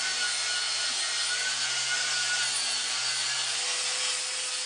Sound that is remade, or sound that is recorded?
recorded